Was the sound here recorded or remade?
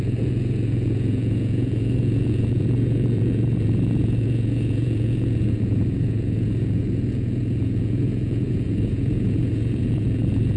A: remade